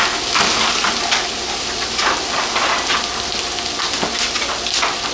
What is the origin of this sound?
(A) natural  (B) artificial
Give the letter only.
A